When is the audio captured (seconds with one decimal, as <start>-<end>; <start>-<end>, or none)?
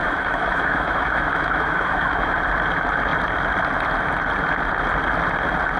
2.4-5.8